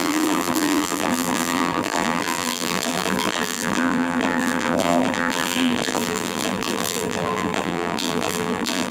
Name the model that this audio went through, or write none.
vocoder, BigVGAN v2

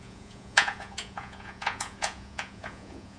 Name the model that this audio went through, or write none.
vocoder, Vocos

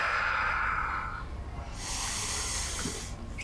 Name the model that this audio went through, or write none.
none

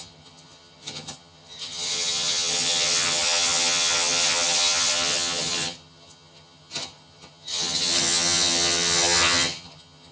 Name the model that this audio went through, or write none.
vocoder, HiFi-GAN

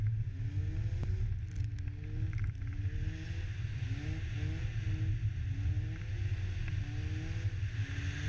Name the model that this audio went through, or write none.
none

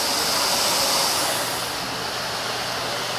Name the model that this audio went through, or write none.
none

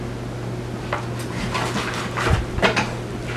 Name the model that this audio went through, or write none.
none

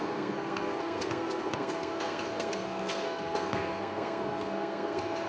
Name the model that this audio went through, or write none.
codec, SNAC